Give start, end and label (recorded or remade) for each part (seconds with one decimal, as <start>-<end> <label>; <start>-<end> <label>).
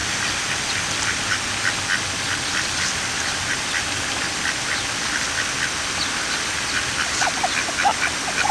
0.0-8.5 recorded